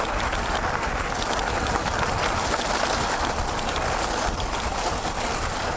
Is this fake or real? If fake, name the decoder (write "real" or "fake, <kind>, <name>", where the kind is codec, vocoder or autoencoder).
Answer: real